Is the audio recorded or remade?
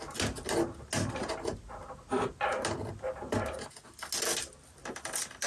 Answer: recorded